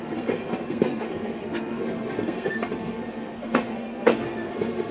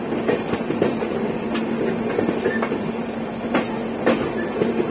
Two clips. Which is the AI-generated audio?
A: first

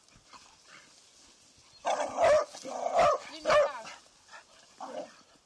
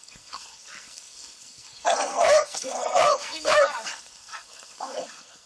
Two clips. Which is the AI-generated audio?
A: second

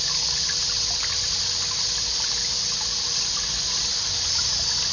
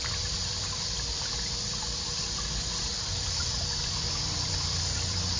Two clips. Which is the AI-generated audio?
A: second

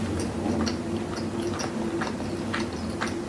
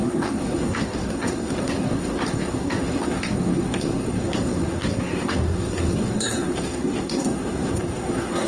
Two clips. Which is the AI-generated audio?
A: second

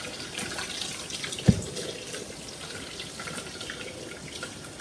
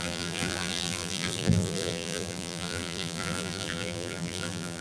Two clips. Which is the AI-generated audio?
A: second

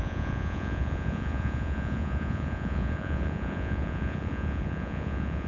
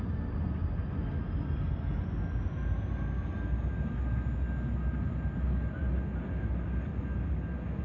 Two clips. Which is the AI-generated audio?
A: first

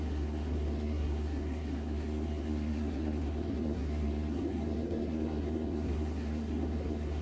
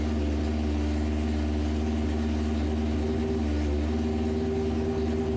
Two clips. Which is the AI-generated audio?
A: first